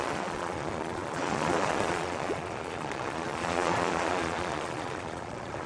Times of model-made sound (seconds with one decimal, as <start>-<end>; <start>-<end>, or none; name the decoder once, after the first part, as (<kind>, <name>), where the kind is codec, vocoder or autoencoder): 0.0-5.7 (vocoder, Vocos)